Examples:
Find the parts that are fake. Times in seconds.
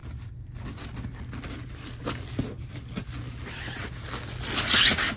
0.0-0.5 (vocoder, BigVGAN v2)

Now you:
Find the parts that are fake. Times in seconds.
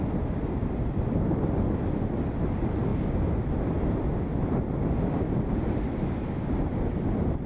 0.0-2.9 (vocoder, BigVGAN v2); 6.6-7.5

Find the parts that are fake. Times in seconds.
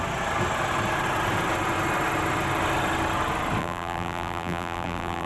3.6-5.3 (vocoder, BigVGAN v2)